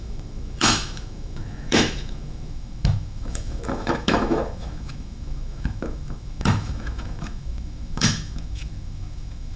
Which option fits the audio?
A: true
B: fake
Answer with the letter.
B